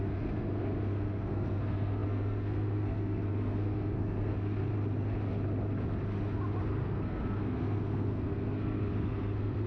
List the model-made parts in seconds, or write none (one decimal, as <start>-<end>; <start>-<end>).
0.0-4.7; 6.6-9.7